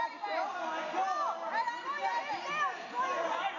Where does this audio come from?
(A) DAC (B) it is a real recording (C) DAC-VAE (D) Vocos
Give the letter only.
B